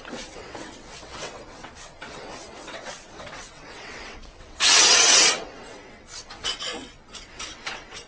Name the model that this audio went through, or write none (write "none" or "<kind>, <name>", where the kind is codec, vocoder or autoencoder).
vocoder, WaveNeXt